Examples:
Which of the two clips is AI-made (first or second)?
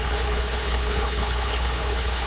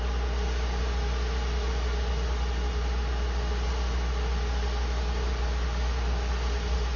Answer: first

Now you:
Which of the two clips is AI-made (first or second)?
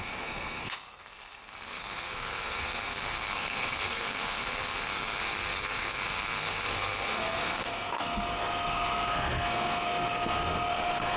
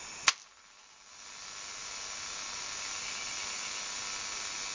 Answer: first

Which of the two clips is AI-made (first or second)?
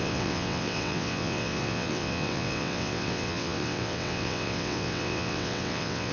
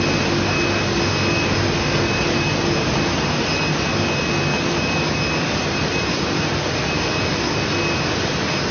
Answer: first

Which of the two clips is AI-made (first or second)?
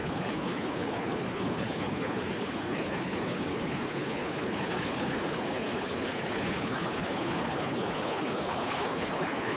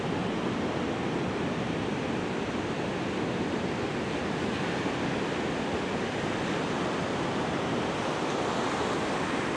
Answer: first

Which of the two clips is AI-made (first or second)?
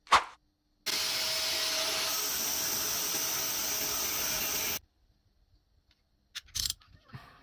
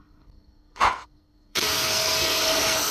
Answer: second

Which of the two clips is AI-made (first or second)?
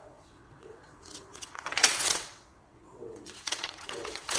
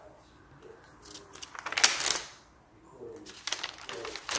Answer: first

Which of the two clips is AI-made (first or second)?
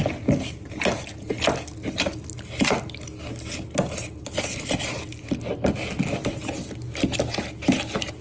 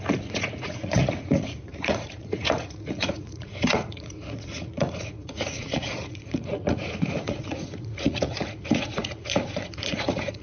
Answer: second